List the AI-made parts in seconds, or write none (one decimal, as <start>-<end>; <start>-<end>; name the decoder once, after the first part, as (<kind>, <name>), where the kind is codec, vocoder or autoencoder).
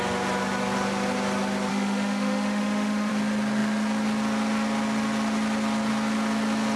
1.7-3.1 (autoencoder, DAC-VAE)